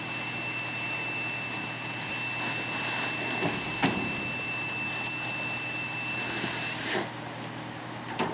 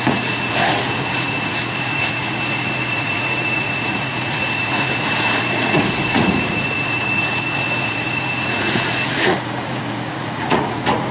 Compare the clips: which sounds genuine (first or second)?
first